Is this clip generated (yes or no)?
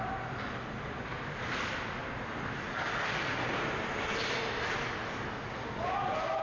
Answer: no